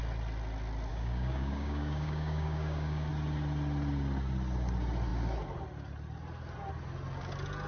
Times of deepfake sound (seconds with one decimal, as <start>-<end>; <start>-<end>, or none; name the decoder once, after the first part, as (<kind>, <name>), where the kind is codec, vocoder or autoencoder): 0.9-3.1 (codec, DAC)